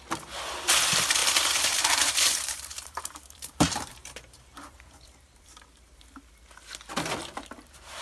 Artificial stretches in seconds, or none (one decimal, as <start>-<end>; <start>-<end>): 1.2-6.0

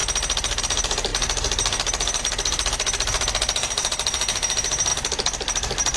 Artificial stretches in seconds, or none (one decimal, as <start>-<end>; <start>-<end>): 0.6-4.9

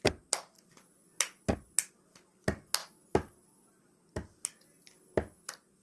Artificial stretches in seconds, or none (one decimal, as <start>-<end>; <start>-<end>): none

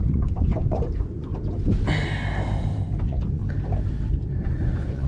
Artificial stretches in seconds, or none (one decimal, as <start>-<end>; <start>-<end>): 0.0-1.3; 3.0-3.4; 4.1-5.1